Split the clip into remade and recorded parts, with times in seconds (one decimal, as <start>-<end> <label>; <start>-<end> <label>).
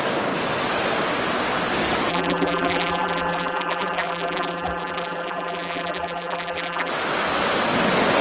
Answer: 0.0-2.1 recorded; 2.1-6.9 remade; 6.9-8.2 recorded